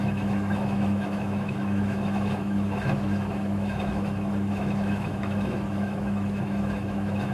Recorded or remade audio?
remade